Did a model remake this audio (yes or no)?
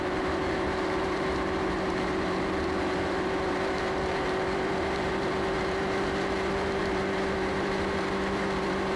yes